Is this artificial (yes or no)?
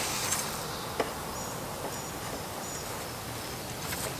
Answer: no